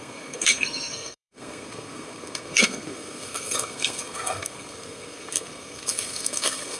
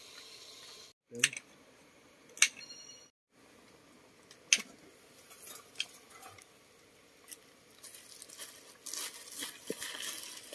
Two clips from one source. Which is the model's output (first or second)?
first